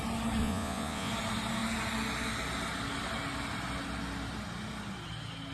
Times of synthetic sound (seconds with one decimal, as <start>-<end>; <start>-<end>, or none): 0.4-1.1